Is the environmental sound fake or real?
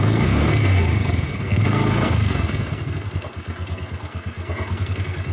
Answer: fake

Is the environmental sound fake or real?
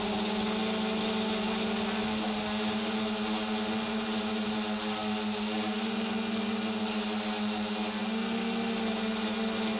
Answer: real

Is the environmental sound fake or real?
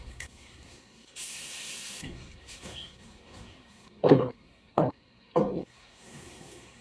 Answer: fake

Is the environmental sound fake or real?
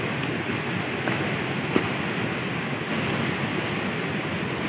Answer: real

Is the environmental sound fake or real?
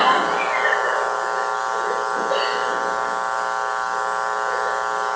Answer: real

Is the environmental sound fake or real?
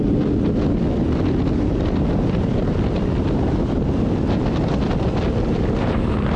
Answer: real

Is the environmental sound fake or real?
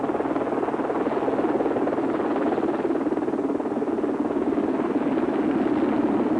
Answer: real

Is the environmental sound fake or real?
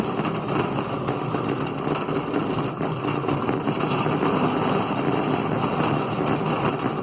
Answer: real